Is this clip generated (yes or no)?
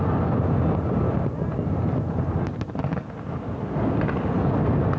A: no